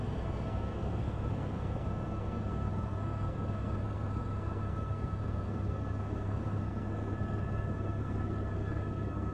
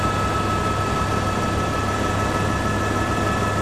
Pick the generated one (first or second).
first